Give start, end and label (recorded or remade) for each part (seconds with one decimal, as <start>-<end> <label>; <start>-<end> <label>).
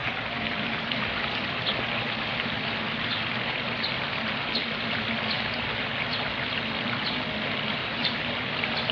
0.0-7.8 recorded; 7.8-8.3 remade; 8.3-8.9 recorded